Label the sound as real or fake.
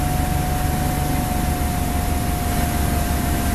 real